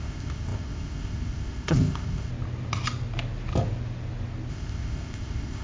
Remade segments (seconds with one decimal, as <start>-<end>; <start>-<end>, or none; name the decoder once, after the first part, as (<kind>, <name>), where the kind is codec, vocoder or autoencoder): 0.0-2.3 (codec, ZipCodec); 4.5-5.6